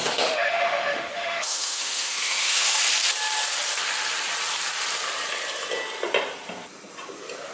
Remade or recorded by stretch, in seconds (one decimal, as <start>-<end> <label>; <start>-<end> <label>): 0.0-2.8 remade; 2.8-7.5 recorded